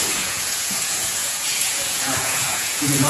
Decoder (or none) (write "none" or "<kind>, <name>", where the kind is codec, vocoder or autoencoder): vocoder, Vocos